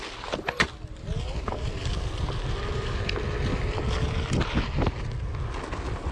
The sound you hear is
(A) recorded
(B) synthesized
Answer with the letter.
A